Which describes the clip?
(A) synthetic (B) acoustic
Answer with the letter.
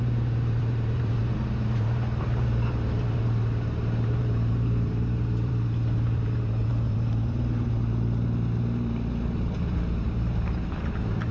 A